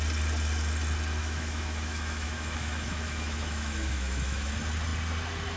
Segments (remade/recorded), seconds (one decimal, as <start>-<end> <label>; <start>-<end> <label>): 0.0-1.2 recorded; 1.2-4.5 remade; 4.5-5.6 recorded